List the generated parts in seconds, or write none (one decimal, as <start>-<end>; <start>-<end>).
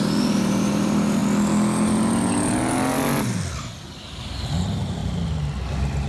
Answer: 0.0-1.2; 4.2-5.0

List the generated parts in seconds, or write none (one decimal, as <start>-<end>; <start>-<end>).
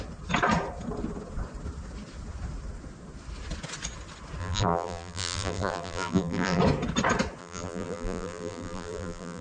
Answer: 4.4-6.6; 7.4-9.4